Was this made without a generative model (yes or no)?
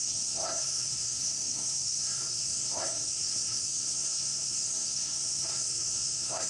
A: no